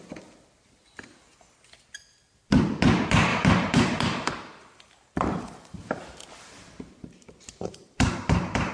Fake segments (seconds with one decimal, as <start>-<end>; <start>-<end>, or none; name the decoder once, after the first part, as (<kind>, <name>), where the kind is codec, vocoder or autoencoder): 3.3-8.7 (vocoder, BigVGAN v2)